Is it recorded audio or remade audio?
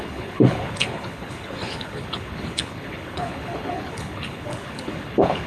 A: remade